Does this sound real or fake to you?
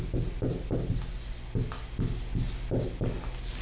real